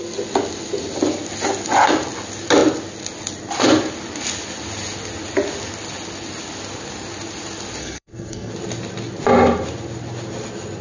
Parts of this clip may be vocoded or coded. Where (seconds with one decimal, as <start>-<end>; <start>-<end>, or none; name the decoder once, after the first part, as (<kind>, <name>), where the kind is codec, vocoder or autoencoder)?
7.8-8.5 (codec, SNAC)